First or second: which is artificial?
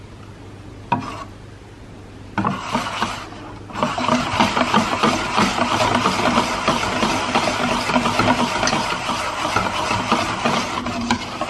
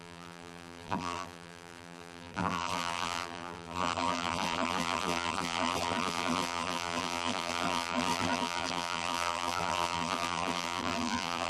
second